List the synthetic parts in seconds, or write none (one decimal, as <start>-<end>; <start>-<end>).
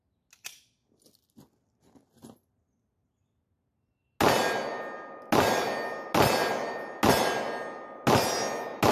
none